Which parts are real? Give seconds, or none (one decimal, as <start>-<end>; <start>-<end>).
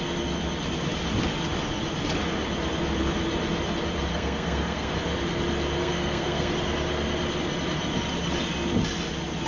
0.0-4.1; 4.9-5.8; 6.5-9.5